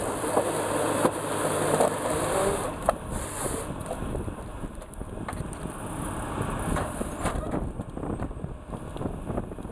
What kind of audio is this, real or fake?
real